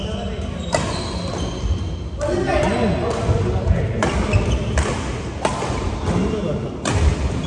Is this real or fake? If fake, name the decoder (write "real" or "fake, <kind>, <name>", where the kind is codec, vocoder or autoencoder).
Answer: real